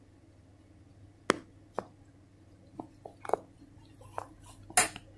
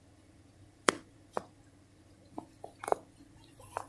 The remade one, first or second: second